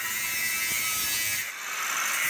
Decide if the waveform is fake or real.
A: real